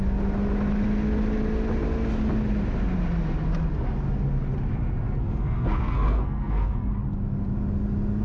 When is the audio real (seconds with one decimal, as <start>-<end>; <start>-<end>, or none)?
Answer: 0.0-5.2; 6.9-8.2